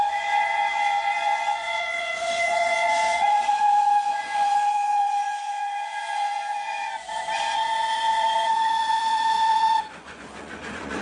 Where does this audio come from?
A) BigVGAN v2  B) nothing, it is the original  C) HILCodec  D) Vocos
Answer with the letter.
D